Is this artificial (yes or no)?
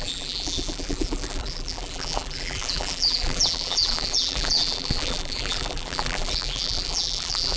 yes